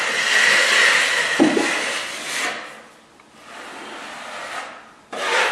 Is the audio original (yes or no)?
yes